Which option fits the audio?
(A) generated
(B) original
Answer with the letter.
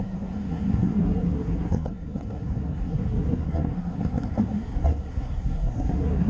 A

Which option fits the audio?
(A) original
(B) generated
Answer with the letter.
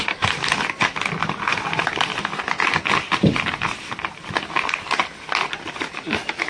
A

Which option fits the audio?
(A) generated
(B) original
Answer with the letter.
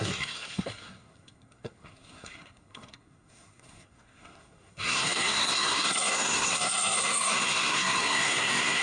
A